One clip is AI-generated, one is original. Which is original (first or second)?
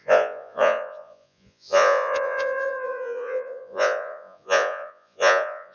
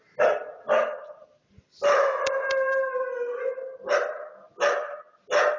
second